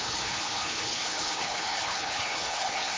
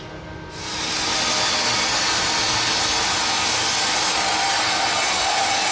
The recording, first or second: second